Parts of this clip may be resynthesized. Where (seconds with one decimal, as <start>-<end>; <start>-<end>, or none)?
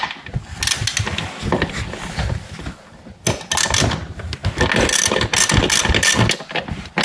none